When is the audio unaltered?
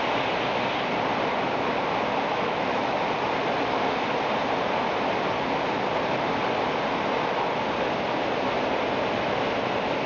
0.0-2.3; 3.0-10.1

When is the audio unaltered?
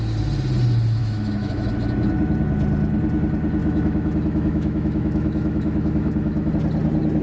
0.0-1.0; 1.7-3.6; 6.5-7.2